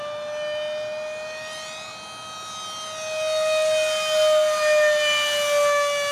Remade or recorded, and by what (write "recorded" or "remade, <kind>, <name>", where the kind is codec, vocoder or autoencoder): recorded